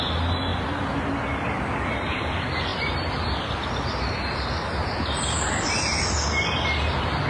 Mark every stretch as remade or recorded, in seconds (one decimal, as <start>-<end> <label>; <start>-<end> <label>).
0.0-7.3 recorded